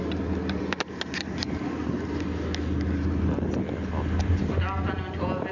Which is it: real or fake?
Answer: real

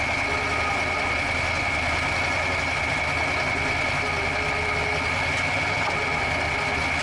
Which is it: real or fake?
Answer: real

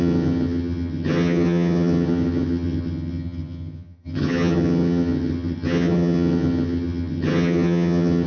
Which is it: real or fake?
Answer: fake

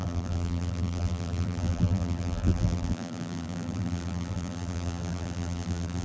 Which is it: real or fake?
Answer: fake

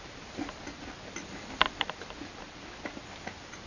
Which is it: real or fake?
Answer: real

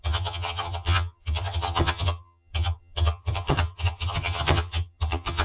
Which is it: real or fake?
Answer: fake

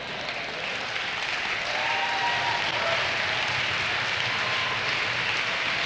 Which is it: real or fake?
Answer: real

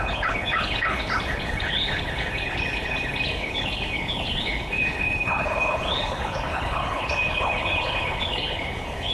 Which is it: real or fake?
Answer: fake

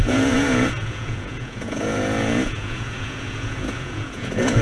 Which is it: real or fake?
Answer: fake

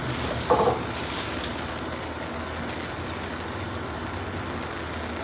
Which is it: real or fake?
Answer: real